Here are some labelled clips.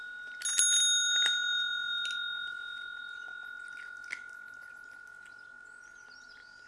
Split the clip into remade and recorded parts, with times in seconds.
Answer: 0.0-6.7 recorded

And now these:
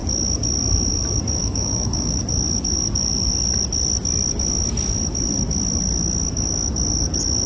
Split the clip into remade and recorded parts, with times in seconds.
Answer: 0.0-1.4 recorded; 1.4-2.2 remade; 2.2-7.5 recorded